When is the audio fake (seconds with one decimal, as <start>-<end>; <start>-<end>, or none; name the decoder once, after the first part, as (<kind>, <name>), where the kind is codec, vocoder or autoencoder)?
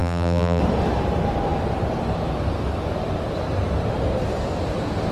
0.0-0.6 (vocoder, BigVGAN v2)